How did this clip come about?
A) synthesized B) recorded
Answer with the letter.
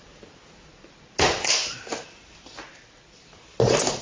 A